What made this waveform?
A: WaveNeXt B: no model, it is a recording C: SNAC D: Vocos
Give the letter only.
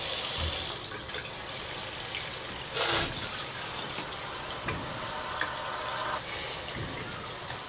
B